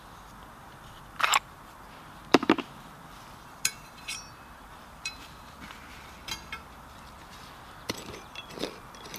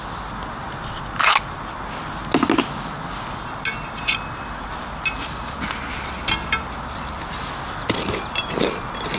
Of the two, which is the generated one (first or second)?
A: first